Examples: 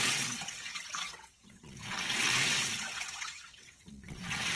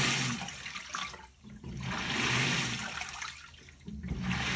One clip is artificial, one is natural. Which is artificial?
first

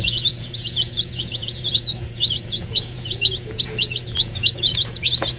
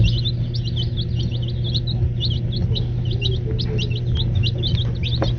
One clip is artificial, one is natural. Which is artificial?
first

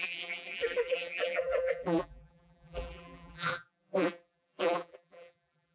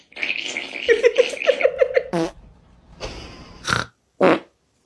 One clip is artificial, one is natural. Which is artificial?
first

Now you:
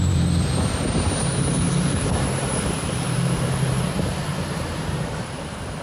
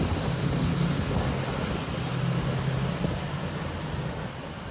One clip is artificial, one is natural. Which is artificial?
first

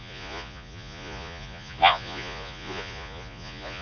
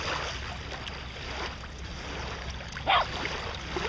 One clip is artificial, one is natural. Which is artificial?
first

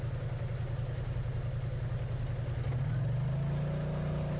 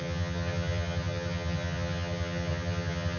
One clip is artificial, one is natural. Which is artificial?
second